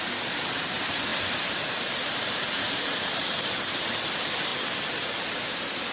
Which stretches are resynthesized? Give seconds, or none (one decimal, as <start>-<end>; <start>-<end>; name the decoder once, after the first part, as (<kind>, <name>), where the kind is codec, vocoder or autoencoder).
0.0-4.5 (vocoder, BigVGAN v2); 5.3-5.9